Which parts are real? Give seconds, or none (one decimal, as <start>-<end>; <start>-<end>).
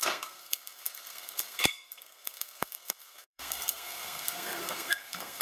none